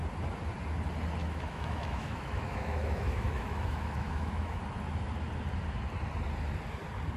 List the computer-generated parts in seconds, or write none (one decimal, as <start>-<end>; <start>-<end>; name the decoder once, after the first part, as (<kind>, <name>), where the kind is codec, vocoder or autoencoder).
1.2-4.6 (autoencoder, DAC-VAE)